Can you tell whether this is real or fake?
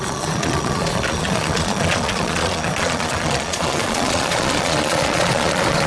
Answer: fake